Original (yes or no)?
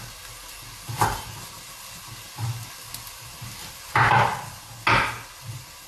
yes